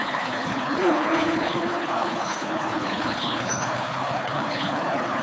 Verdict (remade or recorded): remade